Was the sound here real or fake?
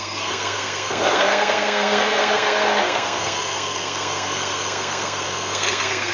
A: fake